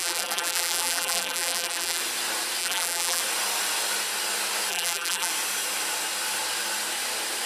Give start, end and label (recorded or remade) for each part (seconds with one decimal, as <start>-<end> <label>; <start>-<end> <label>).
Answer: 0.0-2.0 remade; 2.0-2.6 recorded; 2.6-3.2 remade; 3.2-4.7 recorded; 4.7-5.3 remade; 5.3-7.5 recorded